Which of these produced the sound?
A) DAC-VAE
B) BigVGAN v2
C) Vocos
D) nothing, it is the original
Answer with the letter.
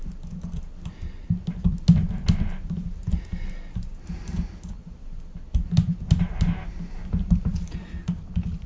D